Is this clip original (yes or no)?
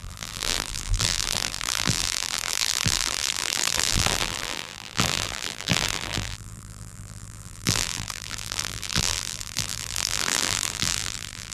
no